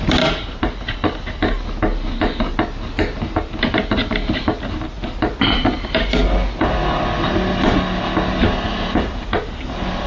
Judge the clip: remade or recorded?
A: recorded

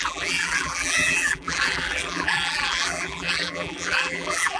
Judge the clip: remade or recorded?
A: remade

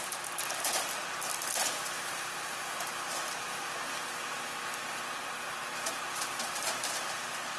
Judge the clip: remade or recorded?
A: recorded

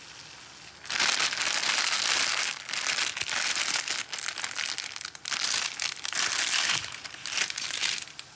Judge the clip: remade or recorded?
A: recorded